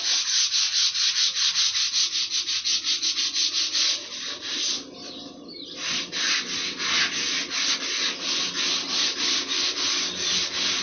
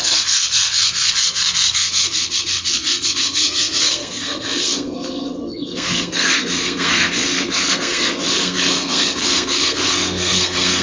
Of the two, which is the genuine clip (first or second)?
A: first